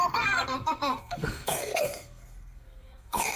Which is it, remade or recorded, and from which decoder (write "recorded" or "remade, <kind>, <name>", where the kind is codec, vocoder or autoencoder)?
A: remade, codec, SNAC